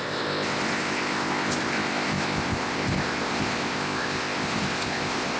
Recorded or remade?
remade